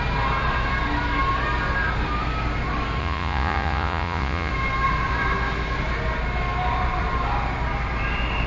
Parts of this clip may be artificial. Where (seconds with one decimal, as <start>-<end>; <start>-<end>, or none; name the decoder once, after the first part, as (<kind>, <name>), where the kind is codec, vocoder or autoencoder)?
3.0-4.5 (vocoder, Vocos)